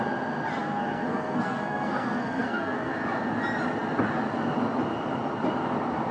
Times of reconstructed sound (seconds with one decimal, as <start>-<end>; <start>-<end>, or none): 0.6-2.9